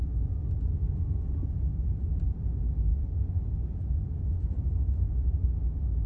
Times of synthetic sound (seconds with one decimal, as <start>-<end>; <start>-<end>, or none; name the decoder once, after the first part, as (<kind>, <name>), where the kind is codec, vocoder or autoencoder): none